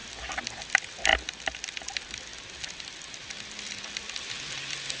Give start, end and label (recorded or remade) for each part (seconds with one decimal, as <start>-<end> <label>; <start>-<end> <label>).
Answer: 0.0-5.0 recorded